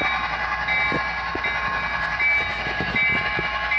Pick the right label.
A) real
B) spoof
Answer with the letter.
A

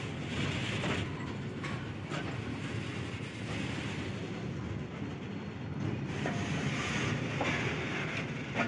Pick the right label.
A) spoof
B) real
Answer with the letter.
B